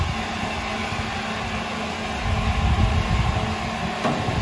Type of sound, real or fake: real